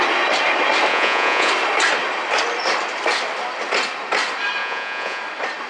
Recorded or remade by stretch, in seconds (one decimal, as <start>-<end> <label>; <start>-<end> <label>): 0.0-0.9 recorded; 0.9-1.5 remade; 1.5-4.6 recorded; 4.6-5.2 remade; 5.2-5.7 recorded